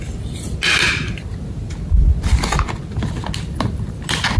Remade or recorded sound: recorded